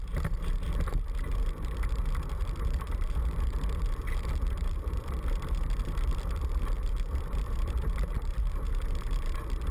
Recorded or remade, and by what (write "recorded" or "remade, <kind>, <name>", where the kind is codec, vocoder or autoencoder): remade, vocoder, BigVGAN v2